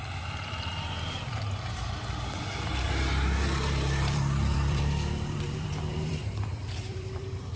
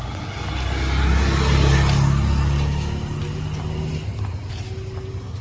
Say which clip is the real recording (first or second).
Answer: second